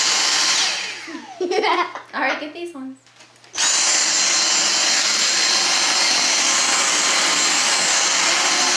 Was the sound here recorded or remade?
recorded